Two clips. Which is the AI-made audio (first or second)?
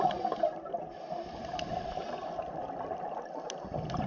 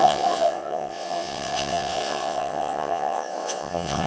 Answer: second